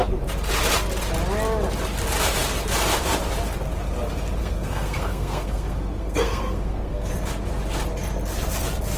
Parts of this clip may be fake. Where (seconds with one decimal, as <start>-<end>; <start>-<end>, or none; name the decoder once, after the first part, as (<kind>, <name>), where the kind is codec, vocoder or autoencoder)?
4.4-7.1 (codec, SNAC)